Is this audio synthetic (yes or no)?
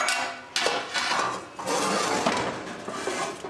no